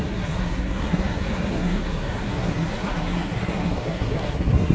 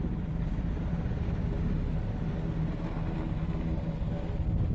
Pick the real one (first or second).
second